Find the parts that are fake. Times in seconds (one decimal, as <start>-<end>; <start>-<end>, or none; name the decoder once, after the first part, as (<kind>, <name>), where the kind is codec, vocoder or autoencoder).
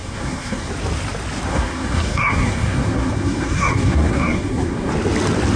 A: 0.0-0.7 (codec, SNAC); 1.5-4.9